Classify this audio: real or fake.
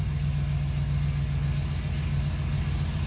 real